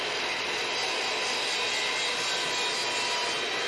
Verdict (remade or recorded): recorded